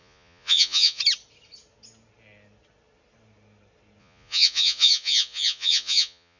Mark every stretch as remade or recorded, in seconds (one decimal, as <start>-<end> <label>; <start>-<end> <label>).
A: 0.0-1.0 remade; 1.0-4.0 recorded; 4.0-6.4 remade